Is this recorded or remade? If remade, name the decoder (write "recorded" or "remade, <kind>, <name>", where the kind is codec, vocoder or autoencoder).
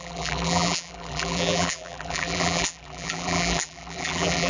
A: remade, vocoder, BigVGAN v2